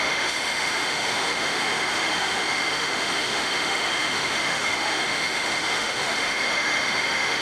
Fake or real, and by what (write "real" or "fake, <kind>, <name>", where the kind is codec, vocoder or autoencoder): fake, autoencoder, DAC-VAE